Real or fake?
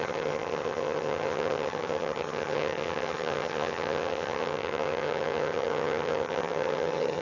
fake